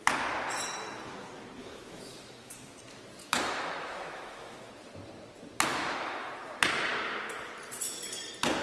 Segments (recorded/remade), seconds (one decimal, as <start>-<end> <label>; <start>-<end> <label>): 0.0-1.6 recorded; 1.6-2.5 remade; 2.5-3.2 recorded; 3.2-4.7 remade; 4.7-5.7 recorded; 5.7-6.3 remade; 6.3-8.6 recorded